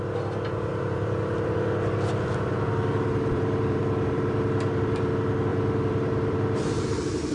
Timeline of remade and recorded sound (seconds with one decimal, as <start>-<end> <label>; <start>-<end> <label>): 0.0-0.7 recorded; 0.7-5.1 remade; 5.1-5.5 recorded; 5.5-7.3 remade